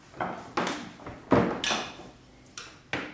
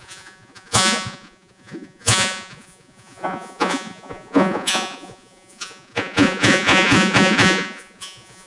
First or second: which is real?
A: first